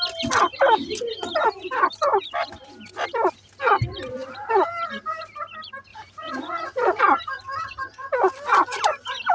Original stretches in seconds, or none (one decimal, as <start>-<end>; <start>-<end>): 0.0-5.9; 7.0-9.3